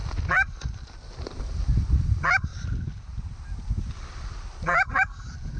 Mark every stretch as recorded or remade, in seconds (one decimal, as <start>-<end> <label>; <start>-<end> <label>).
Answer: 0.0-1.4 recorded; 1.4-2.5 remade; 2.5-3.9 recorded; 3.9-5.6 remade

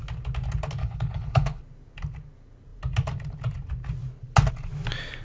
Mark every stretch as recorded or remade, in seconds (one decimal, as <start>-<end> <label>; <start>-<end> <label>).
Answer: 0.0-0.8 recorded; 0.8-1.6 remade; 1.6-5.2 recorded

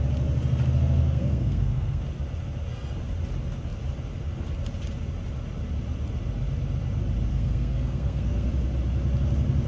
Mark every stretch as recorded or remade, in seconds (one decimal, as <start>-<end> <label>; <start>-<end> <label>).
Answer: 0.0-1.0 recorded; 1.0-2.0 remade; 2.0-7.3 recorded; 7.3-8.5 remade; 8.5-9.7 recorded